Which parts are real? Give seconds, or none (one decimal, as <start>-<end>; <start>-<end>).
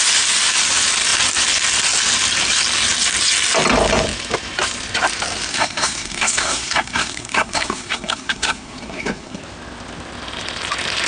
0.0-5.5; 9.4-11.1